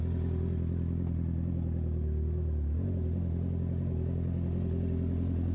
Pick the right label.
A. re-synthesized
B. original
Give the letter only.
B